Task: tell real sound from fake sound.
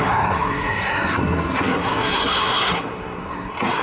fake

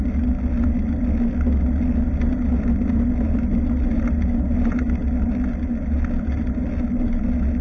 real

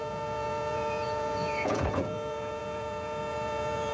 fake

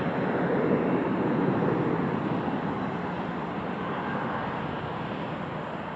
real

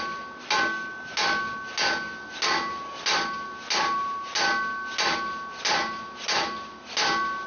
real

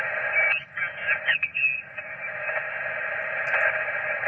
real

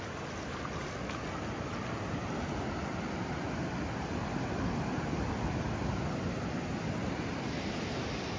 real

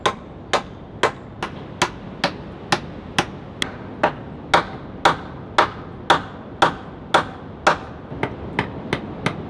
real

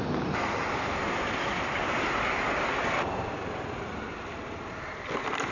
real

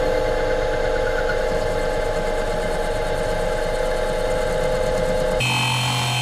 real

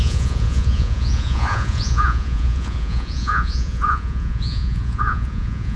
fake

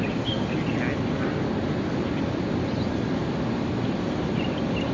real